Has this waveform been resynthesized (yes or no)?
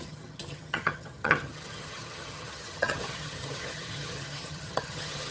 yes